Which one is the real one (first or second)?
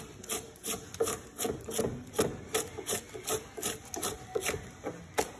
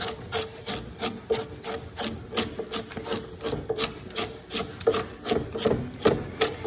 second